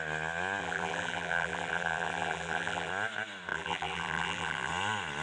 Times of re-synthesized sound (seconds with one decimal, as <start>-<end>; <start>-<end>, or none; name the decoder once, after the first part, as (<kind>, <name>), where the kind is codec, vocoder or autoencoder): 0.6-2.9 (vocoder, BigVGAN v2); 3.5-4.7

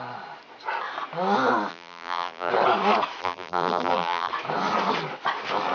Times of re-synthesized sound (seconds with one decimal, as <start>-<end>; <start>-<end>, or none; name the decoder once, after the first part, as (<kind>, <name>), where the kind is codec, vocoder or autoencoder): 1.7-2.5 (vocoder, BigVGAN v2); 3.2-4.3

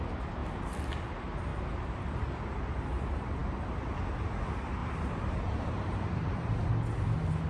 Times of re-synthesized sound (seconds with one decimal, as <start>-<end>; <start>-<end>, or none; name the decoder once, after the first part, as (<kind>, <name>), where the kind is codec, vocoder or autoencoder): 1.5-2.0 (vocoder, BigVGAN v2); 4.8-6.7

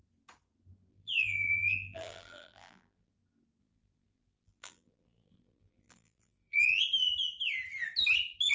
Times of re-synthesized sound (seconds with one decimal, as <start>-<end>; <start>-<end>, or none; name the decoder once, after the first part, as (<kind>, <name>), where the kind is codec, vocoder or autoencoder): 0.9-3.1 (vocoder, BigVGAN v2); 3.6-6.8

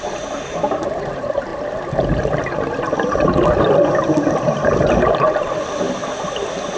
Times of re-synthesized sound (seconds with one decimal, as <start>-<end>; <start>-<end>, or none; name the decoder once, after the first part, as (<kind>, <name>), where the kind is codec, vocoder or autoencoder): 0.0-1.5 (vocoder, BigVGAN v2); 4.3-6.0

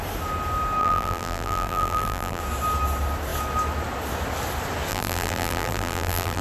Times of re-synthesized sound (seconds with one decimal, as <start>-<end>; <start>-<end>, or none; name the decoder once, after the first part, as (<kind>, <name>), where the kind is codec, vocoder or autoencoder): 0.8-2.4 (vocoder, BigVGAN v2); 4.9-6.4